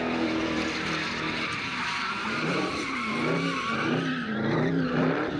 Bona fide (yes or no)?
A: no